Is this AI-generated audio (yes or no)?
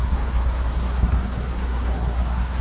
yes